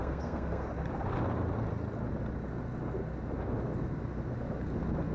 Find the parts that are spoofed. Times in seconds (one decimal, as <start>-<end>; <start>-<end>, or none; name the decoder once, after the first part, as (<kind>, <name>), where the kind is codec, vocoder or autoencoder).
0.0-0.7 (codec, SNAC)